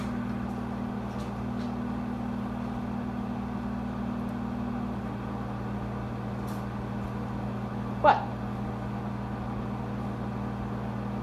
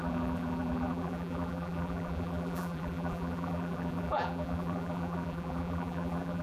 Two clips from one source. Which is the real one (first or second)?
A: first